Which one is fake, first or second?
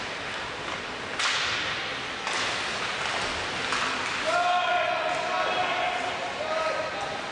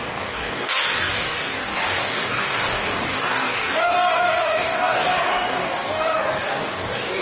second